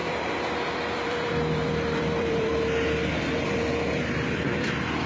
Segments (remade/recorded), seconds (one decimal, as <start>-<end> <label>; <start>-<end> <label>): 0.0-5.1 remade